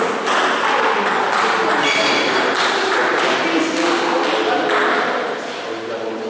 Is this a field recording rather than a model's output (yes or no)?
yes